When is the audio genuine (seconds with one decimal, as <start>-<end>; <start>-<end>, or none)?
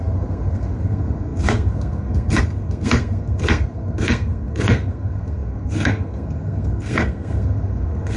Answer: none